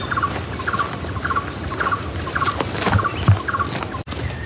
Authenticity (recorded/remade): recorded